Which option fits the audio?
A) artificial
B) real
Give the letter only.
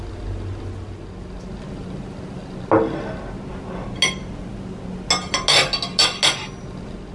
B